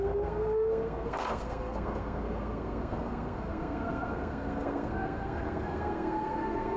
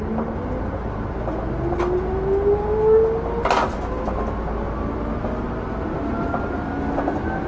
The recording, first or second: second